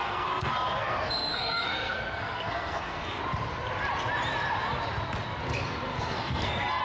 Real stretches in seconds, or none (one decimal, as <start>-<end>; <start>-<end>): 3.2-5.9